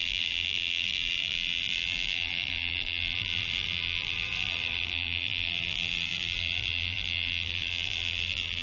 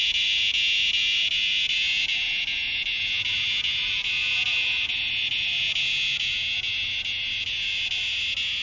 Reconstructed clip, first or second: first